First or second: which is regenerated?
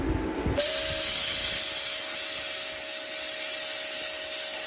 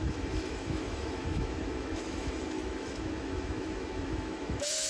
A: second